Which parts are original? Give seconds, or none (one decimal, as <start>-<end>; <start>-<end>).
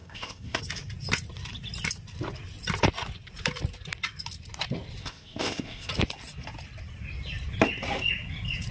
0.6-5.0; 5.9-8.7